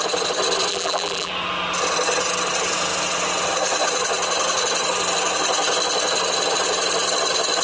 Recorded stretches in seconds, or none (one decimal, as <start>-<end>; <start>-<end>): 0.0-0.7; 1.3-7.6